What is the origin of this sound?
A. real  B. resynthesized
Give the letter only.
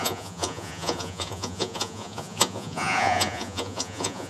B